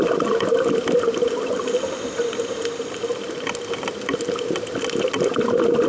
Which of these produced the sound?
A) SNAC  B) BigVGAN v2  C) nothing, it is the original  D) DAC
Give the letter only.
C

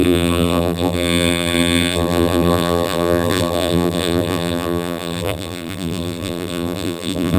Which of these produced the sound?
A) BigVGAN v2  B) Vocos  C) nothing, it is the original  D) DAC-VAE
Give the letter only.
A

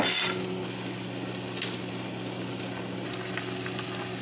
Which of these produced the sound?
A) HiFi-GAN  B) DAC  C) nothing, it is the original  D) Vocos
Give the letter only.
C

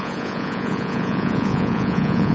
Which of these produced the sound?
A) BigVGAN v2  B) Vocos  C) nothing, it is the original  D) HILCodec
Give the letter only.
B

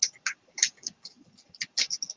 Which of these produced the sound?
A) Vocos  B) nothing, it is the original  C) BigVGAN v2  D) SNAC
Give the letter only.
B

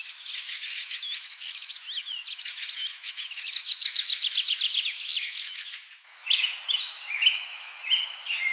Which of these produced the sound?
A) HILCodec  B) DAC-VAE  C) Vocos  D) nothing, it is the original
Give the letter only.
B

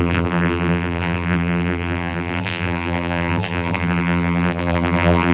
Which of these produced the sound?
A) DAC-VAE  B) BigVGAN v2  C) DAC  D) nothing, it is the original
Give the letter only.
B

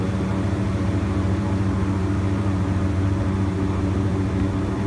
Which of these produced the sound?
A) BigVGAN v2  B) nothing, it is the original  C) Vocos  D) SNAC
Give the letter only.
A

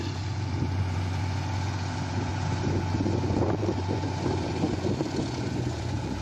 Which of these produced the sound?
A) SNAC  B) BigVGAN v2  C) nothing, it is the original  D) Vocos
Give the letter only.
D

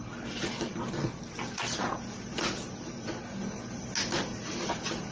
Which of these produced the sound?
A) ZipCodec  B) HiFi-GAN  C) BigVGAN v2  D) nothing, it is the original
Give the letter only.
D